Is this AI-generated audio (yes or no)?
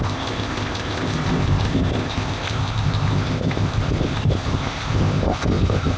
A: yes